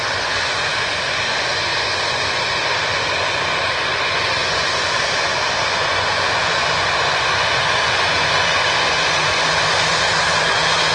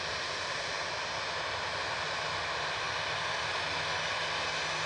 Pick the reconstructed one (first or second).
first